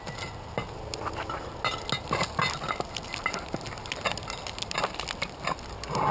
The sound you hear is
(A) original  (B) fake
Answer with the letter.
A